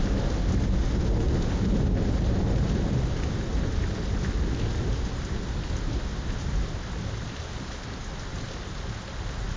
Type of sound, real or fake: real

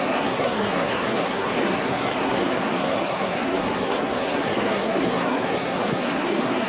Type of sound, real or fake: fake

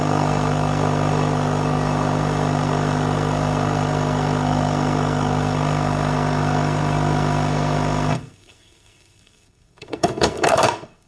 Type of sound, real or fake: fake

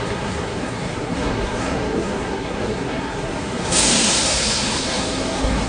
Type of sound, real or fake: fake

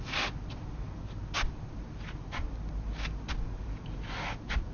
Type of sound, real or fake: real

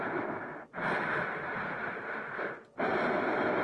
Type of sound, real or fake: real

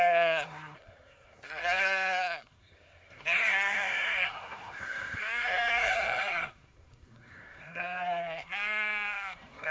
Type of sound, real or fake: fake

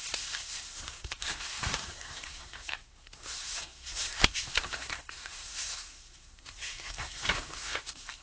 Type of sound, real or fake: fake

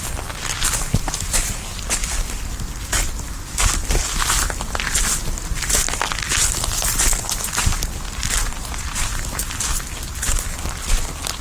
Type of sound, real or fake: real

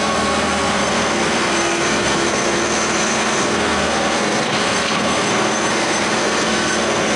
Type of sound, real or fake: fake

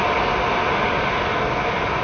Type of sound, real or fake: real